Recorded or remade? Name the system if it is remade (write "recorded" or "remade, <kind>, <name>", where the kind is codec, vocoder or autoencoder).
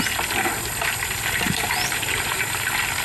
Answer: recorded